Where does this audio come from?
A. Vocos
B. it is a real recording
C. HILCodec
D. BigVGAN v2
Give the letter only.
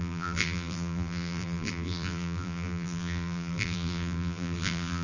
D